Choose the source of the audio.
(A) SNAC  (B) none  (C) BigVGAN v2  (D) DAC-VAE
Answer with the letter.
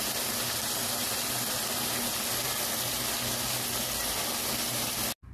B